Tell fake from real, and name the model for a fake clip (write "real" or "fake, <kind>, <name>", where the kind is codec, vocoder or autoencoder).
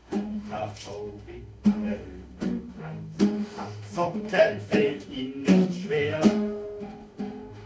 fake, autoencoder, DAC-VAE